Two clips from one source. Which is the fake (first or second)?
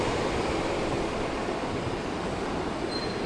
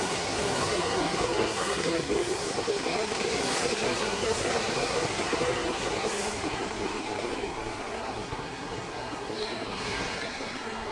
second